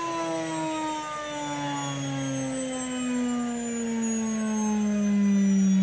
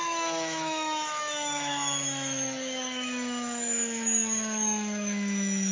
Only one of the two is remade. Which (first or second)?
second